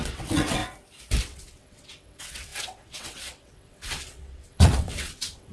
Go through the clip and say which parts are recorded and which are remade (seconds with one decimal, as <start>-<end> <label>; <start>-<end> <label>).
0.0-0.6 remade; 0.6-1.2 recorded; 1.2-5.5 remade